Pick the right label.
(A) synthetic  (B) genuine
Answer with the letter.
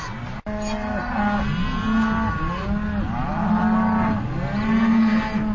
B